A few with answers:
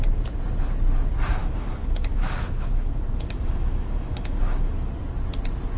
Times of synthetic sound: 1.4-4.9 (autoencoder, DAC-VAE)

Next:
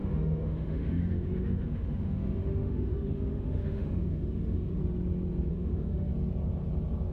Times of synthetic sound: 0.0-4.8 (autoencoder, DAC-VAE); 5.5-6.1

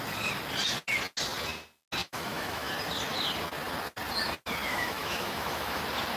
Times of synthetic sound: 2.0-2.7 (autoencoder, DAC-VAE); 4.7-5.8

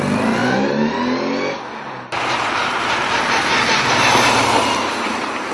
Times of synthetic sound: none

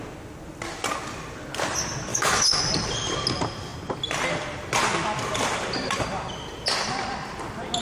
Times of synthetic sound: 2.1-2.6 (autoencoder, DAC-VAE)

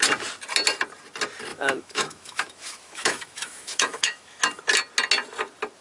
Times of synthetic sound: 1.5-4.4 (autoencoder, DAC-VAE)